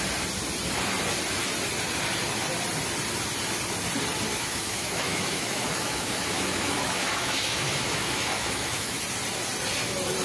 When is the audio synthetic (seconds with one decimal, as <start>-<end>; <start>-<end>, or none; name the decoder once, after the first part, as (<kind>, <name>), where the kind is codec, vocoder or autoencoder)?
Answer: 4.3-9.0 (autoencoder, DAC-VAE)